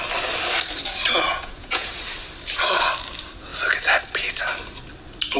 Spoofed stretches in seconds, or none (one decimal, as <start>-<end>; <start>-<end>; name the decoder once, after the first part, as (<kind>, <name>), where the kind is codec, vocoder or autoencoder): 1.3-1.9 (vocoder, Vocos)